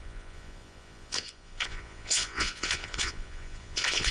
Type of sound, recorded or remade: remade